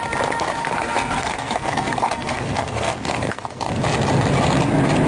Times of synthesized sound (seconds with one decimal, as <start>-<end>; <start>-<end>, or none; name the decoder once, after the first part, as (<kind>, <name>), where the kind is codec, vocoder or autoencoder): 0.6-3.7 (codec, SNAC)